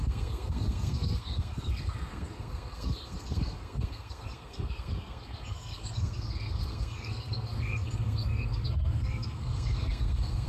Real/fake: fake